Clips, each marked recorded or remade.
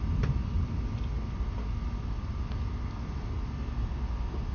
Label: recorded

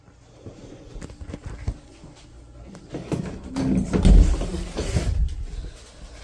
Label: recorded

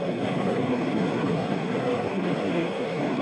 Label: remade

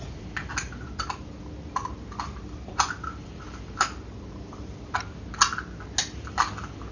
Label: recorded